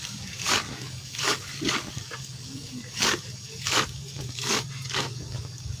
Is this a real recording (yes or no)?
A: no